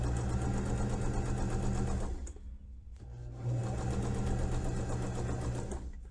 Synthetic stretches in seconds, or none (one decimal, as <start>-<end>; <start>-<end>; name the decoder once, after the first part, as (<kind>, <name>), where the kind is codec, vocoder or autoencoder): none